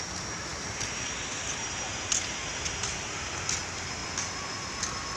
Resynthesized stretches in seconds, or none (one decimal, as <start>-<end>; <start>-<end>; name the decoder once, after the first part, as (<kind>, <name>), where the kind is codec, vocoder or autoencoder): none